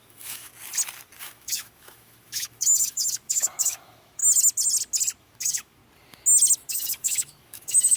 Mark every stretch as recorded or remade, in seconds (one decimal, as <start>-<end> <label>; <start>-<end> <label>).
0.0-0.5 remade; 0.5-1.2 recorded; 1.2-4.2 remade; 4.2-5.2 recorded; 5.2-5.8 remade; 5.8-6.7 recorded; 6.7-8.0 remade